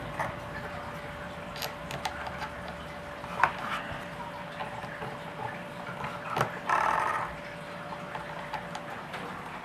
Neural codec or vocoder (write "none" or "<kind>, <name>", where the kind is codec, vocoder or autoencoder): none